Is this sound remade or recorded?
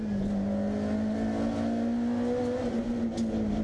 recorded